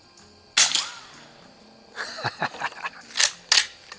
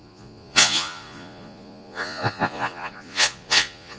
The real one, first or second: first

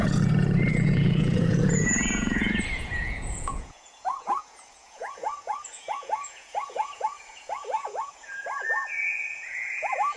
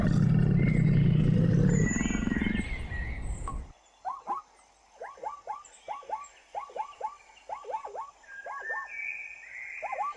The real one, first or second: second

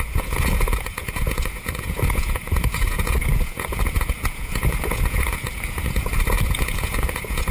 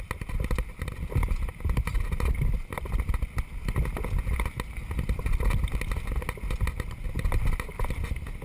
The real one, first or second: second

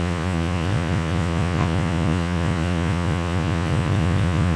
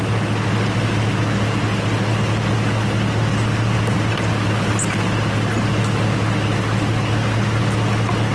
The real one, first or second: second